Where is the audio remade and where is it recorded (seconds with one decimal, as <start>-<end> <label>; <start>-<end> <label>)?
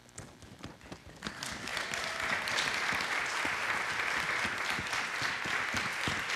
0.0-6.4 recorded